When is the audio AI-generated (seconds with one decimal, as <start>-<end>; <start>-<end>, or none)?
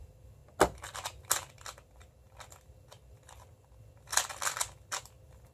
none